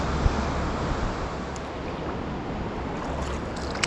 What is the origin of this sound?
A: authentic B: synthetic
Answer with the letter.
A